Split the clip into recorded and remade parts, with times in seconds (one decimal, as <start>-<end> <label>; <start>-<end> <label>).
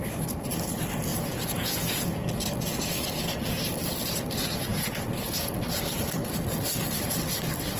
0.0-1.1 recorded; 1.1-2.1 remade; 2.1-4.7 recorded; 4.7-5.5 remade; 5.5-7.8 recorded